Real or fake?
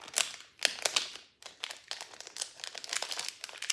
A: real